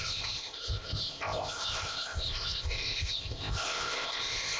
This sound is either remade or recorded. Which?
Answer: remade